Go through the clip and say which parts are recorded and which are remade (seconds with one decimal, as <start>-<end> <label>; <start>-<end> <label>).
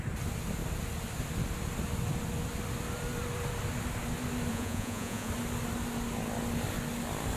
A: 0.0-4.5 recorded; 4.5-5.3 remade; 5.3-7.4 recorded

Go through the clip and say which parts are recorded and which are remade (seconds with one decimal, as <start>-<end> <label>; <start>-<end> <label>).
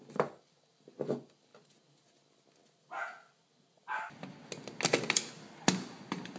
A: 0.0-6.4 recorded